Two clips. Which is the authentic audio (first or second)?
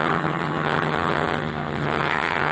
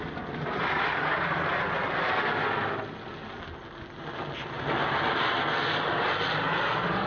second